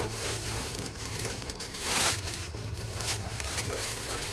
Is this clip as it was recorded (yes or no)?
no